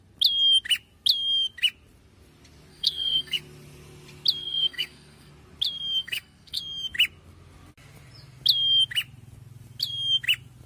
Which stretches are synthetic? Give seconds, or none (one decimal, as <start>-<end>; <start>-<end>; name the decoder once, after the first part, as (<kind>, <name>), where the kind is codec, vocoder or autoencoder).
2.7-3.4 (codec, SNAC); 4.4-5.3; 6.0-6.6